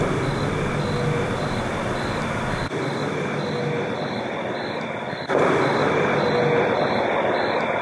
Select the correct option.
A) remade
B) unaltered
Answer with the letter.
B